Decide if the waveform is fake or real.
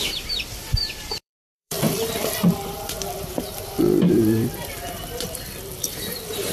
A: fake